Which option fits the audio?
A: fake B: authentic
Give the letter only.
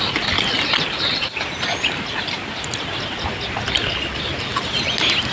B